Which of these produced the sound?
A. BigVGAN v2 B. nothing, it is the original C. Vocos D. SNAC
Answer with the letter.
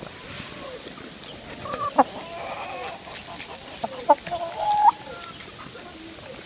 B